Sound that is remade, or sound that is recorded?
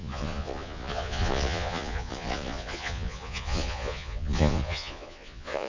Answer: remade